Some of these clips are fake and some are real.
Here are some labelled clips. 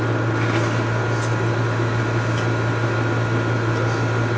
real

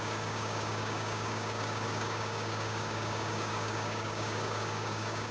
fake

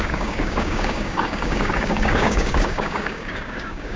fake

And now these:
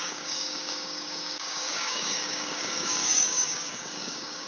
fake